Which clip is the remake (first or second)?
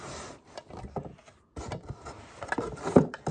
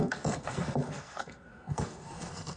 second